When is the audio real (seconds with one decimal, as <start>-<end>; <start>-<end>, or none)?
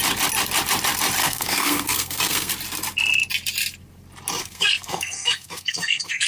0.0-1.2; 2.5-4.4